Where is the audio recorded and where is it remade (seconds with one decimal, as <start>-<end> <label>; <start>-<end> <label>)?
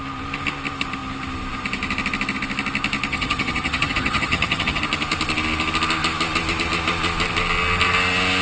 0.0-3.1 recorded; 3.1-4.8 remade; 4.8-8.4 recorded